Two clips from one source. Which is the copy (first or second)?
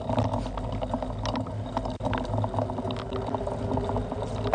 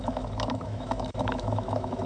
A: second